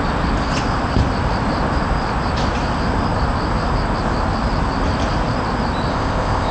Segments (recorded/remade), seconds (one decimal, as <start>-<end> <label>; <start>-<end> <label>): 0.0-5.9 recorded; 5.9-6.5 remade